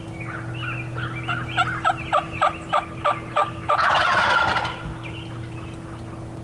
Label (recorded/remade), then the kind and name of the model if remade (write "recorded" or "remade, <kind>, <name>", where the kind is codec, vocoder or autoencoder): recorded